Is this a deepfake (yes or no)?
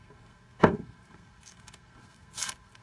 yes